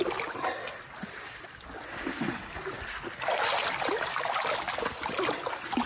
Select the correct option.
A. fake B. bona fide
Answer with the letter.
B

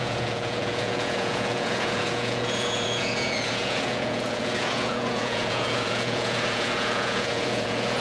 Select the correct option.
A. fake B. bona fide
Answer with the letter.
A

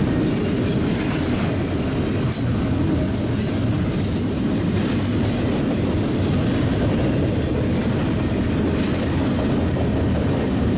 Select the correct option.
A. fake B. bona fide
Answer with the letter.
B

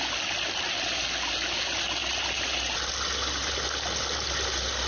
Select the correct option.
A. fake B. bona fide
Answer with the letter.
B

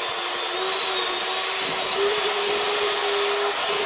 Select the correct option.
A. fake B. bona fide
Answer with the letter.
B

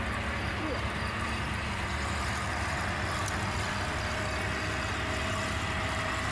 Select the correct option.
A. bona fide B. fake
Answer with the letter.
A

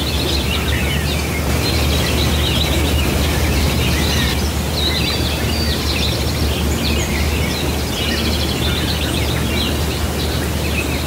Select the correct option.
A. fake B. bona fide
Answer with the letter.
B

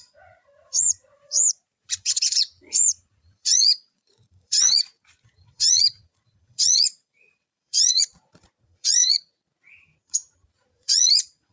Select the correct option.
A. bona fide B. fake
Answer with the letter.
B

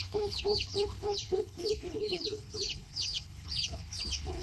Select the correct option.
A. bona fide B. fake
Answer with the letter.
B